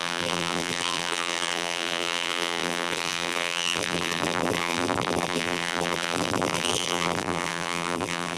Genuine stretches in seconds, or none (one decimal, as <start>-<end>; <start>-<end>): none